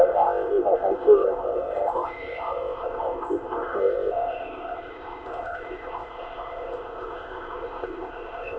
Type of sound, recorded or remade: remade